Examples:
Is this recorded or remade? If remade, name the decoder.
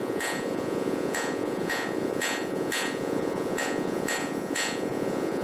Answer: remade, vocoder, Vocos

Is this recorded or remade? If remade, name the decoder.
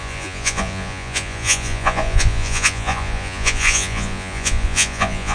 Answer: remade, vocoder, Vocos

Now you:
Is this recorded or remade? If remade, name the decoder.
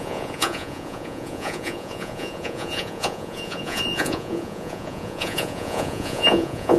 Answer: remade, vocoder, Vocos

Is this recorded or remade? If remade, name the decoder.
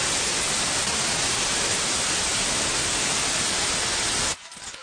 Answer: recorded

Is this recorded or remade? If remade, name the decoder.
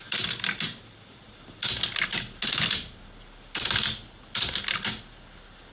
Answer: recorded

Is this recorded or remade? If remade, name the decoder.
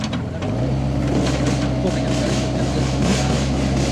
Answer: recorded